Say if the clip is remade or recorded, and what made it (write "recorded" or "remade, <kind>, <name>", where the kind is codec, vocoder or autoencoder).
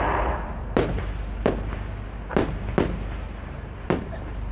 recorded